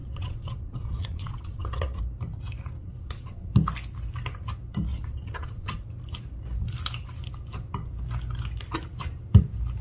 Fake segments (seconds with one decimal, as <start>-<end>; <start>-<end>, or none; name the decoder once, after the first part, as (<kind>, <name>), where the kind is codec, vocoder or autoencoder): 0.0-2.0 (vocoder, Vocos); 2.8-3.5; 4.9-5.9